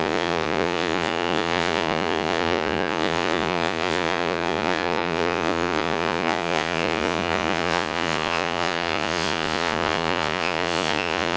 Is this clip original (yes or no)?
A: no